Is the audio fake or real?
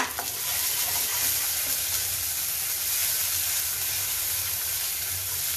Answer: real